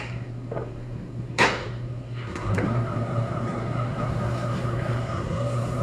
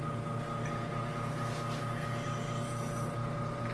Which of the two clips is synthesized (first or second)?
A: first